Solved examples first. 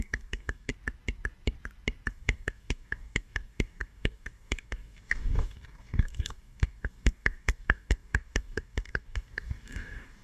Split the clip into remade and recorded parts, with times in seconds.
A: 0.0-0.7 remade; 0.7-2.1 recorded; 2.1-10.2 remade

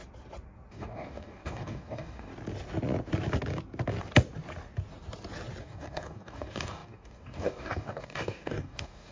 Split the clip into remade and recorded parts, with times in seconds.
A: 0.0-0.7 recorded; 0.7-2.3 remade; 2.3-5.6 recorded; 5.6-9.1 remade

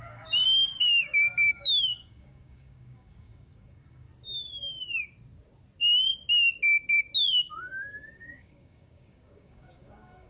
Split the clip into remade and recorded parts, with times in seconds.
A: 0.0-4.1 remade; 4.1-7.5 recorded; 7.5-10.3 remade

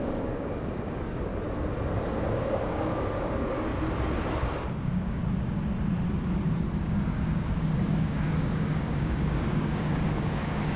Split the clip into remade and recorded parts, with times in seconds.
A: 0.0-1.3 remade; 1.3-2.1 recorded; 2.1-3.7 remade; 3.7-4.8 recorded; 4.8-5.2 remade; 5.2-6.8 recorded; 6.8-10.8 remade

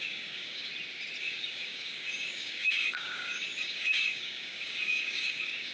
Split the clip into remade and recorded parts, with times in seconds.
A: 0.0-0.7 remade; 0.7-1.2 recorded; 1.2-5.7 remade